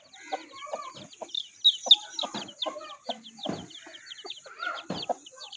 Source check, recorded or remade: recorded